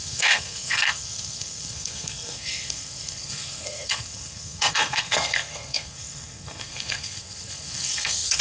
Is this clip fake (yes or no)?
yes